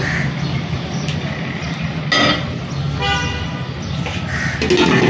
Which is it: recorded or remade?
recorded